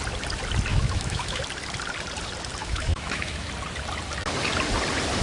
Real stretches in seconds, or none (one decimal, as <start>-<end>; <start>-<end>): 0.0-0.7; 1.4-2.6; 3.5-5.2